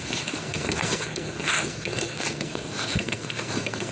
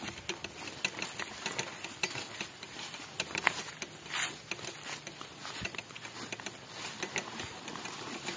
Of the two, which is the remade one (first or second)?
first